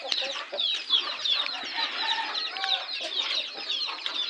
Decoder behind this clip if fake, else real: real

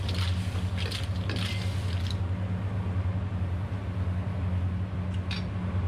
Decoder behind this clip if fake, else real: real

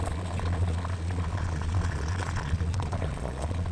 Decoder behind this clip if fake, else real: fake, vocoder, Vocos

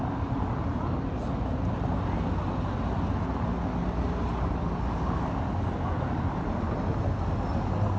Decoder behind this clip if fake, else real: real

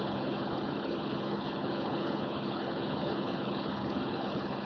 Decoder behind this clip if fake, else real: fake, codec, HILCodec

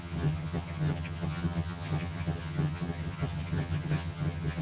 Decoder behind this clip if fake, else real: fake, vocoder, HiFi-GAN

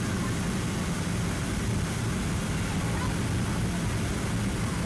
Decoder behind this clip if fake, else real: real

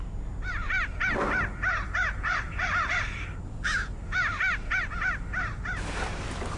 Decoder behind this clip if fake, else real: real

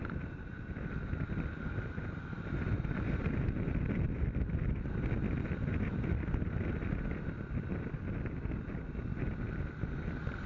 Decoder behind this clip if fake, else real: real